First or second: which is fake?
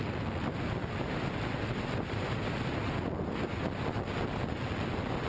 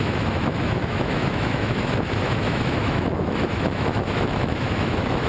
second